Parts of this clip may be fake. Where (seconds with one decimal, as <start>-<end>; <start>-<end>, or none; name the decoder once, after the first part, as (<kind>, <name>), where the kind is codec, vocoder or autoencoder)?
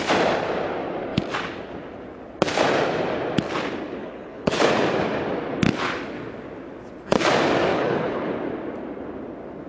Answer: 4.0-4.7 (codec, HILCodec); 7.7-8.3